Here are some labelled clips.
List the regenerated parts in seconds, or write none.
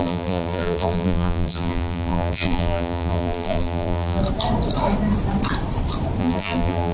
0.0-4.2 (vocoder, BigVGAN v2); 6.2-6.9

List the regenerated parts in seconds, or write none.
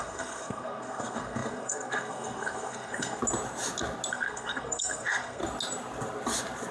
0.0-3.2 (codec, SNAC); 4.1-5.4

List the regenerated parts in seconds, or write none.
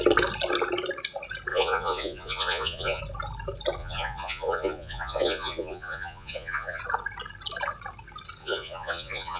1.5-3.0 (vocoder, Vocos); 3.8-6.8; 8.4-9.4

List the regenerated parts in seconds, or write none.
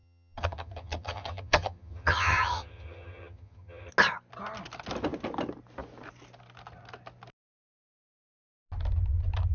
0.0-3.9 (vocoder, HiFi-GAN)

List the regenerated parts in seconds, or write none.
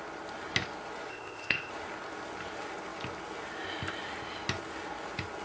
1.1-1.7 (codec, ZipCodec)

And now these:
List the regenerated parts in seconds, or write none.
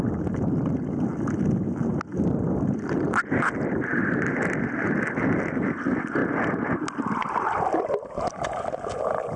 2.1-4.6 (vocoder, BigVGAN v2); 7.2-7.9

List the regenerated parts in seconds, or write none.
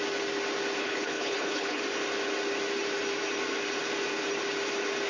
0.8-1.8 (codec, HILCodec)